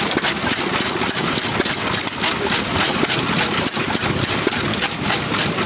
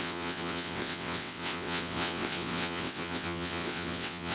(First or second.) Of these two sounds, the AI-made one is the second